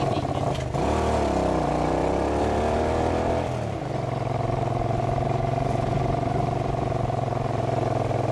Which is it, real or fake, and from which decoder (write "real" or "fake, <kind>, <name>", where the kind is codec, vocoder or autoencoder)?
real